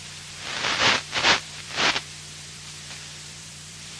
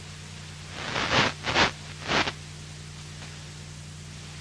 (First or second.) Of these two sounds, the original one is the second